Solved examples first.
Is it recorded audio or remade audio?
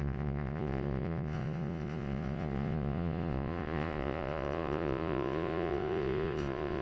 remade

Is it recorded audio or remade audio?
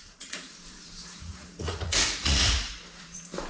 remade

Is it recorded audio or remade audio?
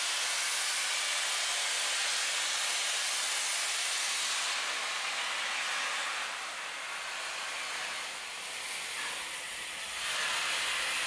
recorded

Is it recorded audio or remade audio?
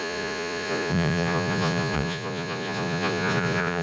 remade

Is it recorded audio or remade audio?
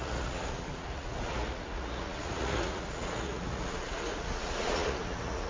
remade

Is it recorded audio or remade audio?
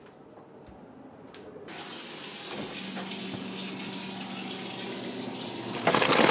recorded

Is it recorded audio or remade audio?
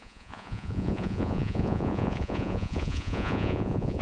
remade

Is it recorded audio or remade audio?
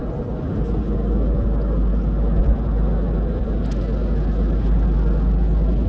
recorded